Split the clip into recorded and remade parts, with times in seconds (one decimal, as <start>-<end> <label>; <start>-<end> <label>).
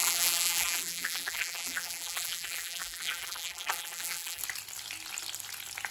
0.0-4.4 remade; 4.4-5.9 recorded